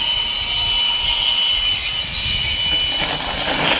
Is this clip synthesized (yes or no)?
no